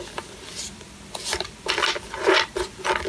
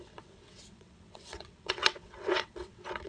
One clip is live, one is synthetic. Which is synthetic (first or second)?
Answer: second